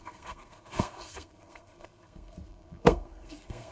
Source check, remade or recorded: remade